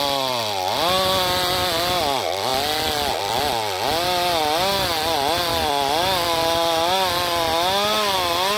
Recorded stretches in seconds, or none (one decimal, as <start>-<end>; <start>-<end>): 0.0-8.6